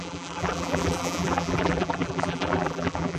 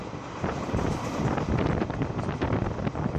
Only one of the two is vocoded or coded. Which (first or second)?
first